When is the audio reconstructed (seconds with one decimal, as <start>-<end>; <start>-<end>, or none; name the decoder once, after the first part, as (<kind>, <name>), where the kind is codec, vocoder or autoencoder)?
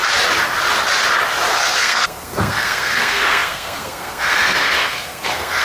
1.6-5.6 (codec, SNAC)